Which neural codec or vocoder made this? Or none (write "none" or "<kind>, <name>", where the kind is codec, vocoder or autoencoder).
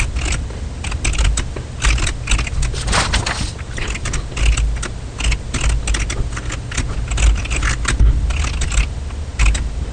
none